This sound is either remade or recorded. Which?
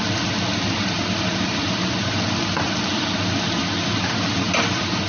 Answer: recorded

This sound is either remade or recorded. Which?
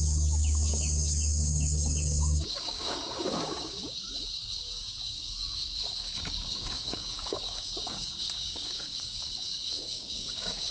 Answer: remade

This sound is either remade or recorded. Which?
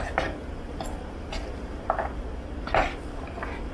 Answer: recorded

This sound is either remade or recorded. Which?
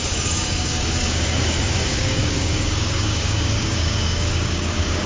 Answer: remade